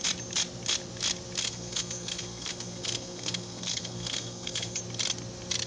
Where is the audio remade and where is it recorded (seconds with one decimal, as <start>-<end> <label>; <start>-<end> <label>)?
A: 0.0-1.4 recorded; 1.4-4.8 remade; 4.8-5.7 recorded